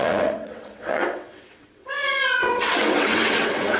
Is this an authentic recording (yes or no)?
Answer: no